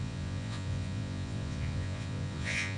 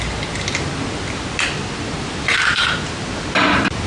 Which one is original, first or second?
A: second